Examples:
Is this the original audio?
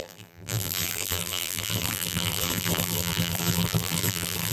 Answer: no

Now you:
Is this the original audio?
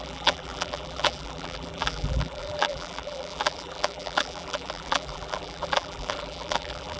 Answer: no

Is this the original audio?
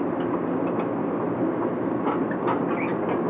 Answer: yes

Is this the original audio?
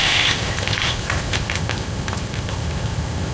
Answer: no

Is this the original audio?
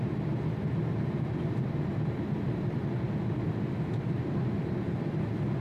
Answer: yes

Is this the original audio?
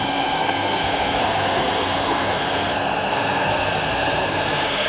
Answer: no